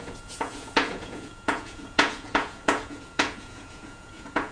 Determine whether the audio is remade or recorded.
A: remade